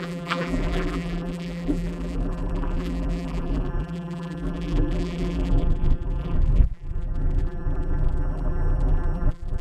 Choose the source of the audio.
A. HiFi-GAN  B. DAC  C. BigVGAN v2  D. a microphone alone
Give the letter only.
C